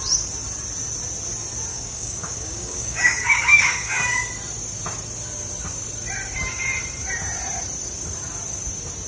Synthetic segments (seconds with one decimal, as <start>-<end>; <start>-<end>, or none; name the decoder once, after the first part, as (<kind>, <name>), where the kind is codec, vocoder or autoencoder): 1.7-4.3 (codec, DAC)